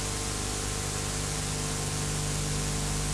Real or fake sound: real